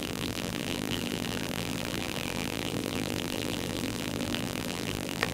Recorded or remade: remade